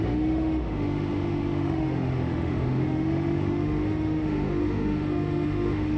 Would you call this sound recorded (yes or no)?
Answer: no